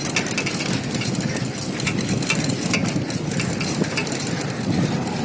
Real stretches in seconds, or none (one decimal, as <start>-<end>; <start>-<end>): 0.0-5.2